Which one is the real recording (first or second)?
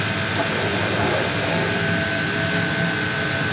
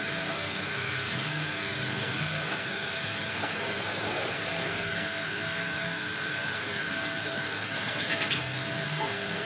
first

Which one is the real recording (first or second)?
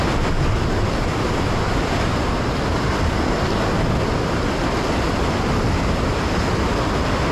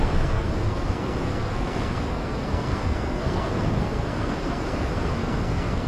first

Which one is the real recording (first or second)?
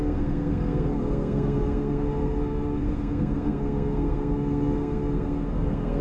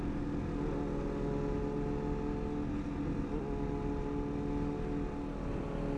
second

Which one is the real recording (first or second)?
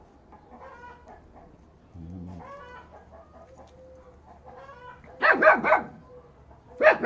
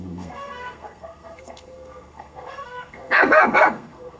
first